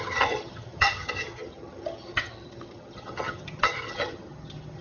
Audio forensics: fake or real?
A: fake